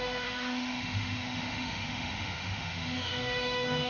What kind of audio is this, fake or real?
fake